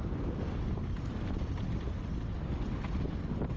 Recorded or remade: recorded